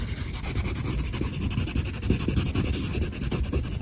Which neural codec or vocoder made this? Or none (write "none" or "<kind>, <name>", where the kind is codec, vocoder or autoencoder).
none